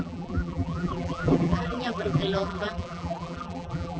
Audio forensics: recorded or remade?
remade